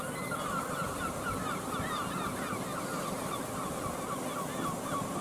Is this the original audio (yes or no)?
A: yes